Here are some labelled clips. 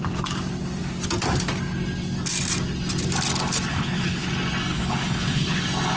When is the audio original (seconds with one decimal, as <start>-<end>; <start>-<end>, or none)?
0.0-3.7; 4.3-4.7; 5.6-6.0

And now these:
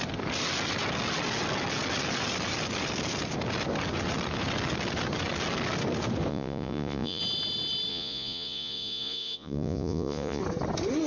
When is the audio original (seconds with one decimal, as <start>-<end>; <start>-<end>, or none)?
0.0-6.3; 7.2-7.9; 10.4-11.1

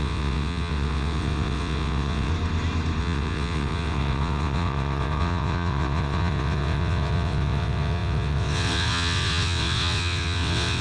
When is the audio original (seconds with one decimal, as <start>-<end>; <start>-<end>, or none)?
2.3-3.0